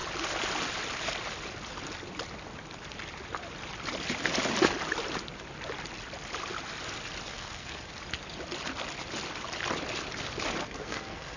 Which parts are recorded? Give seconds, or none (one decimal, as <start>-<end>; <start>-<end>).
0.0-7.3; 7.9-10.6